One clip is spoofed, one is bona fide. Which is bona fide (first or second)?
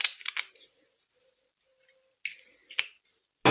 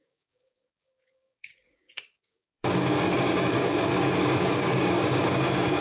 first